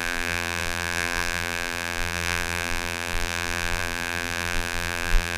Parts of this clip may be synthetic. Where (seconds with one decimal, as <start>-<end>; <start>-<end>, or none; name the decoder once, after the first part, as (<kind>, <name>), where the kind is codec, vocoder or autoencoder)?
0.0-5.4 (vocoder, BigVGAN v2)